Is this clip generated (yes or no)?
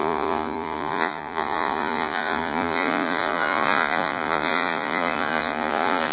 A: yes